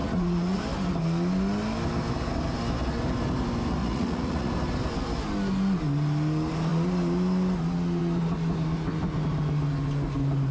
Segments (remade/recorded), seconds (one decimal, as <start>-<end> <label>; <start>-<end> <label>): 0.0-0.6 remade; 0.6-3.8 recorded; 3.8-4.5 remade; 4.5-10.5 recorded